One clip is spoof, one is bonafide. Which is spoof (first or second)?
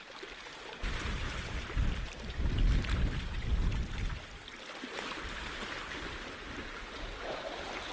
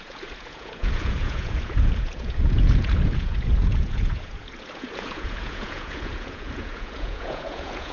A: second